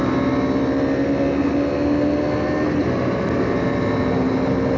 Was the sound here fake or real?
real